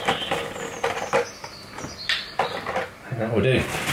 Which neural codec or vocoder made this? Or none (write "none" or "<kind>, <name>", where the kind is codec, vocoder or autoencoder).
none